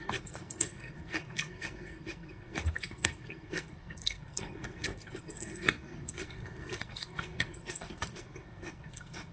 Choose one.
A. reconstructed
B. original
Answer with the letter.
A